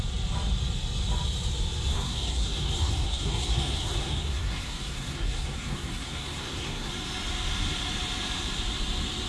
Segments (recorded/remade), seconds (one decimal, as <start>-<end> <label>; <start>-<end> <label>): 0.0-1.9 recorded; 1.9-6.9 remade; 6.9-9.3 recorded